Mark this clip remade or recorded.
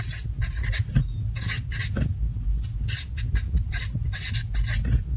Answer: recorded